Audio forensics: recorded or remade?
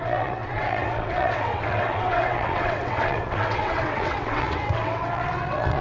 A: remade